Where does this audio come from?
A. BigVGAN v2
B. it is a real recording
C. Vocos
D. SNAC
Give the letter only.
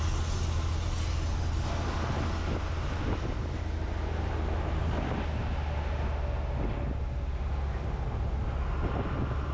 B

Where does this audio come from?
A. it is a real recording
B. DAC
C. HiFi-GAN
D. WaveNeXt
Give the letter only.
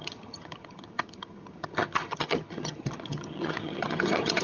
C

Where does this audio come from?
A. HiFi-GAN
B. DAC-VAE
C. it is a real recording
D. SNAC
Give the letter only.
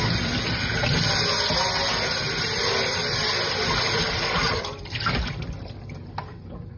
C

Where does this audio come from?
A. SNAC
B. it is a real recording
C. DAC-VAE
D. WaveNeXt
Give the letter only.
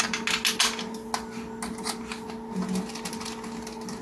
B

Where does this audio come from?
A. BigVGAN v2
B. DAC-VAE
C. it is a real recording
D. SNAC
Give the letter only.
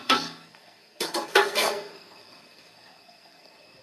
D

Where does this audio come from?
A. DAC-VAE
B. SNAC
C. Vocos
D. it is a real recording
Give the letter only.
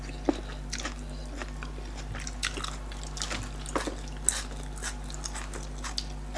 D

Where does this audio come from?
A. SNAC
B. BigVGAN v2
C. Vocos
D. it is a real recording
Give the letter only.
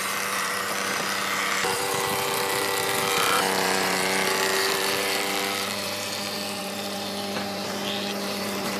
B